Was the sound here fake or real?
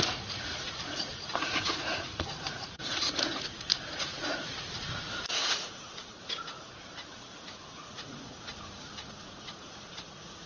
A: fake